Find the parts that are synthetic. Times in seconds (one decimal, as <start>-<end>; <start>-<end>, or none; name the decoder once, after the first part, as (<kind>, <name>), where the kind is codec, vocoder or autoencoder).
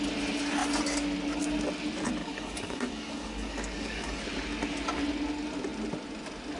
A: 2.2-4.2 (codec, DAC)